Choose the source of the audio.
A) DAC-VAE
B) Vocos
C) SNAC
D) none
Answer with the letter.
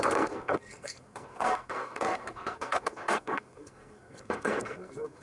C